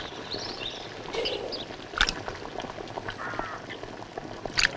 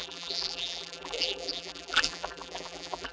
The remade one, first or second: second